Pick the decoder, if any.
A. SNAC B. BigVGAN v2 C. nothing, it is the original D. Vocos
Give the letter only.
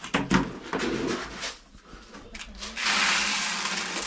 C